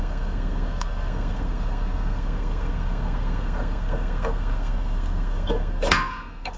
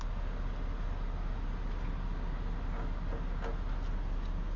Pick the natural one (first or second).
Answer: second